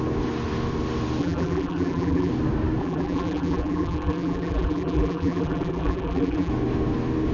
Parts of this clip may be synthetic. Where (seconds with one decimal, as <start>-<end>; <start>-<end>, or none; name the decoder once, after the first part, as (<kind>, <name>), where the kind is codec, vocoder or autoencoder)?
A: 1.2-2.3 (vocoder, BigVGAN v2); 2.8-6.5